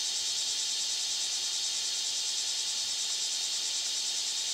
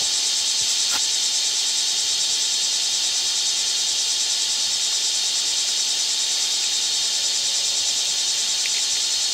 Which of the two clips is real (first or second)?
first